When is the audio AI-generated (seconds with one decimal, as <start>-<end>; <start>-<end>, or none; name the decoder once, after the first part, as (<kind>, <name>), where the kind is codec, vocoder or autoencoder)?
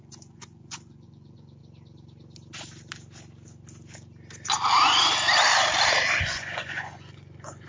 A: 0.0-1.6 (vocoder, Vocos); 6.2-7.7